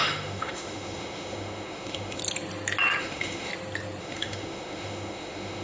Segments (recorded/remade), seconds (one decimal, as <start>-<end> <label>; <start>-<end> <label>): 0.0-2.2 remade; 2.2-3.0 recorded; 3.0-3.5 remade; 3.5-4.0 recorded; 4.0-5.6 remade